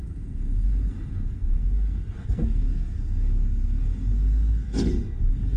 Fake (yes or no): yes